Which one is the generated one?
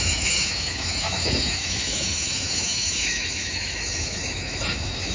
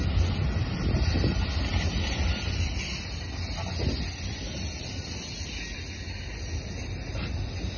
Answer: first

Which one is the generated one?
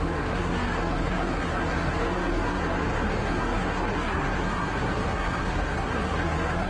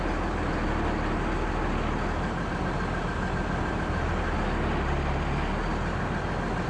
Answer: first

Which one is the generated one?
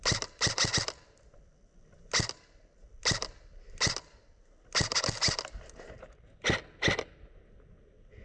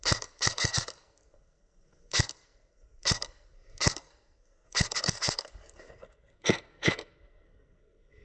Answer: second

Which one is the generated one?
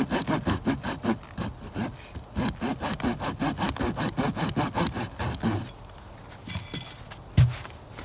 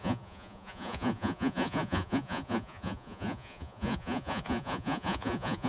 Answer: second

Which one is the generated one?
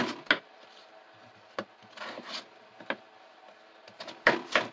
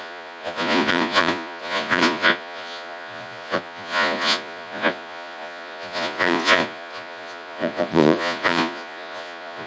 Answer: second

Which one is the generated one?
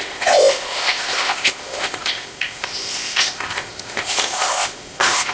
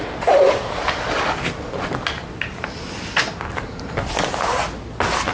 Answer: first